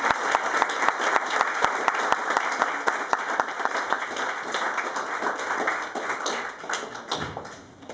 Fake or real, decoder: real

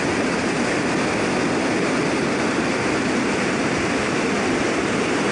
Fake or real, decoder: real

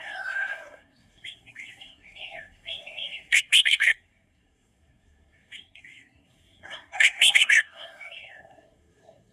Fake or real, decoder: fake, codec, SNAC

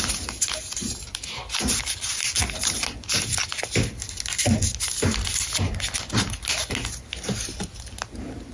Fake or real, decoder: real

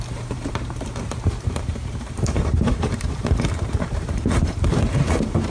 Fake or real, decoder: fake, vocoder, BigVGAN v2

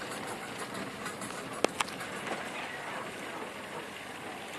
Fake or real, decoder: real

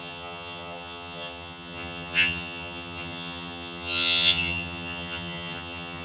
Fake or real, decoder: fake, vocoder, HiFi-GAN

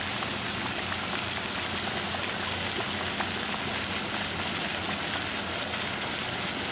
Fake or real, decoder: real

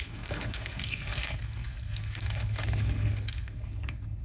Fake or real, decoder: fake, codec, SNAC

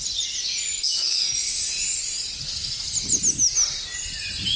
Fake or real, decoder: real